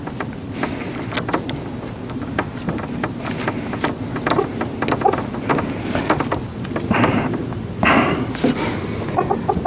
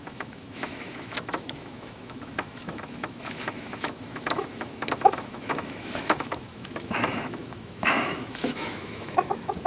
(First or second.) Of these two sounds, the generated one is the second